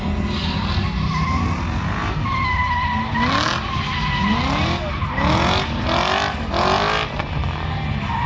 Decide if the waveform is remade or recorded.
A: recorded